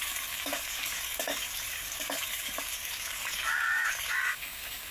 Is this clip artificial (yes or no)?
yes